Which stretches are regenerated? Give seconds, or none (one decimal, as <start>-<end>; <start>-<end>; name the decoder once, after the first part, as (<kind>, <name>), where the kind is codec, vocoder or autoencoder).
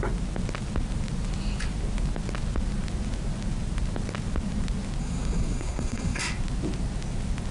5.0-6.2 (codec, SNAC)